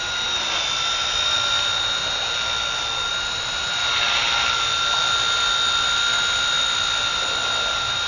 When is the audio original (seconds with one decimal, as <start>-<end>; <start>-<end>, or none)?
2.0-3.1; 3.8-4.5